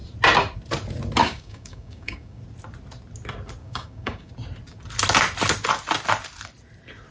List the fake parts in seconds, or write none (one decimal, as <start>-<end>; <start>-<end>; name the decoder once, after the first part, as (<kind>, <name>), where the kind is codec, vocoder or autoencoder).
1.2-2.4 (codec, DAC); 3.6-4.3